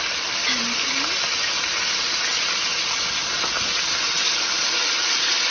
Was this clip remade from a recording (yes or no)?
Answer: no